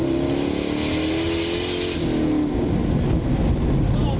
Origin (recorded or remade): recorded